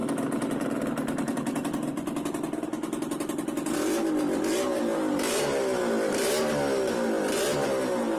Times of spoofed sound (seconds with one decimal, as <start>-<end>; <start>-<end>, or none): none